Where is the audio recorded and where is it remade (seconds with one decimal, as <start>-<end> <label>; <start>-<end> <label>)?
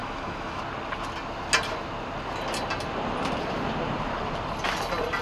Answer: 0.0-0.6 remade; 0.6-5.2 recorded